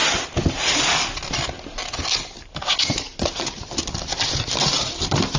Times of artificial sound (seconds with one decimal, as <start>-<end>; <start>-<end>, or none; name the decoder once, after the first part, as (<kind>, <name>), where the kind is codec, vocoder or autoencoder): none

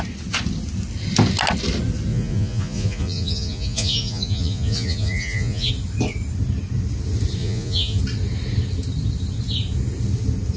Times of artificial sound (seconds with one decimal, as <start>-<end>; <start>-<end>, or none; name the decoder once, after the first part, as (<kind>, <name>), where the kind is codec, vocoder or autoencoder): 2.1-5.7 (vocoder, Vocos); 7.4-8.0